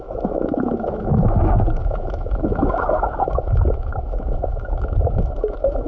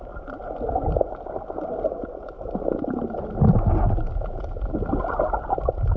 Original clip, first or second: second